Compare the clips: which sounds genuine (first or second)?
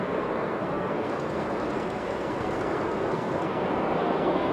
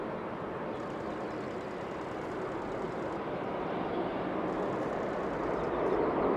second